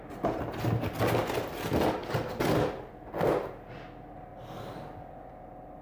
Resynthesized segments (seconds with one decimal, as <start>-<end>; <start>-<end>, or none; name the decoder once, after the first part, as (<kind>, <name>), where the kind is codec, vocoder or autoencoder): none